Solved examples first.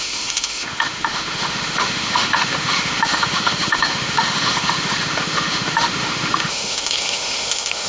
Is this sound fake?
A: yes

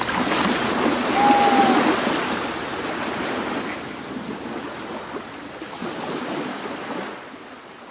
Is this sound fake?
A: no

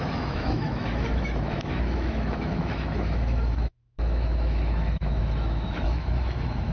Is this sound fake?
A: yes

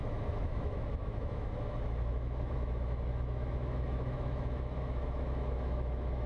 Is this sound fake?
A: yes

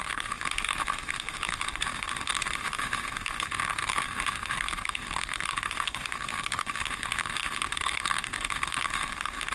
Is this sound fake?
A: yes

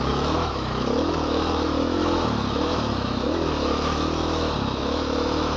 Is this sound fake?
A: yes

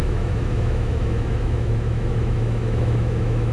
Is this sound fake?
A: yes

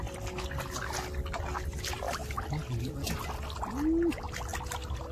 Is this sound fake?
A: no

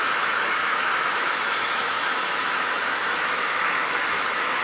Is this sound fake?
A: yes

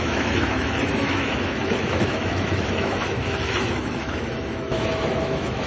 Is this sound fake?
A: yes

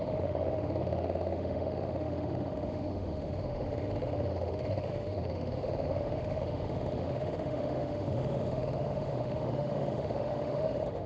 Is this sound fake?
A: yes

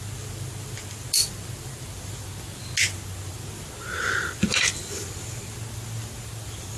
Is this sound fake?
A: no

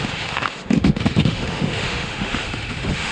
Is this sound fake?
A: yes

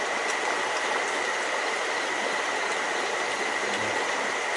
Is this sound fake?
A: no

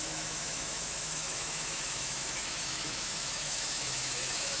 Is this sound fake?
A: yes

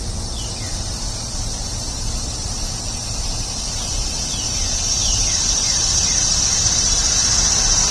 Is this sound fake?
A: no